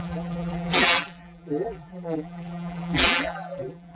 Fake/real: fake